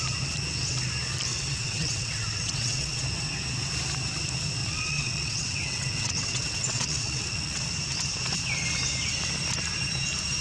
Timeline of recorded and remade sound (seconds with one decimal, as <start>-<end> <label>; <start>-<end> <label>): 0.0-1.3 recorded; 1.3-3.0 remade; 3.0-4.6 recorded; 4.6-7.7 remade; 7.7-10.4 recorded